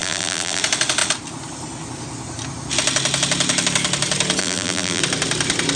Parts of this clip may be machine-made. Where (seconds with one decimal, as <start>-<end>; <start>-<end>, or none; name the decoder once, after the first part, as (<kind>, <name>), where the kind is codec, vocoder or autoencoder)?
0.0-0.6 (vocoder, BigVGAN v2); 4.4-5.0